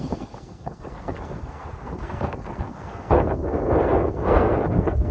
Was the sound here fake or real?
fake